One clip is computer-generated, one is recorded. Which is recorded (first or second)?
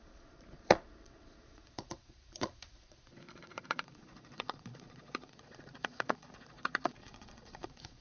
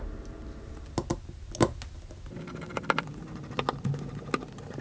second